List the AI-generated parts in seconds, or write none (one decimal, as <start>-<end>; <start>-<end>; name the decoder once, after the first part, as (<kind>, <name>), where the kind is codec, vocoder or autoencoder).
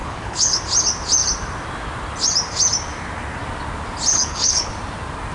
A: 0.0-0.6 (codec, HILCodec); 4.1-4.7